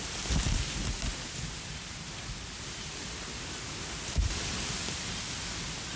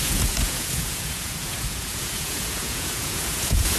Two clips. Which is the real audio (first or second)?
first